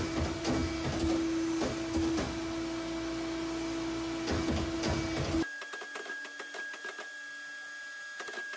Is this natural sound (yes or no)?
yes